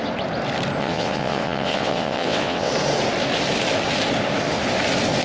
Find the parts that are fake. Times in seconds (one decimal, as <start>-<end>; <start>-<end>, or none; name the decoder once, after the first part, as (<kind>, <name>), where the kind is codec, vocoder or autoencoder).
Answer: 0.8-2.7 (vocoder, WaveNeXt)